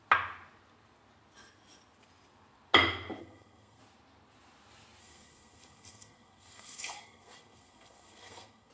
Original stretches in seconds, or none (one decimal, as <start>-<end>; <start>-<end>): 0.0-3.2; 3.8-5.0